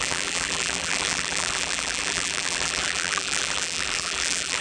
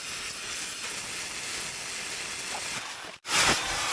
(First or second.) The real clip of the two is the second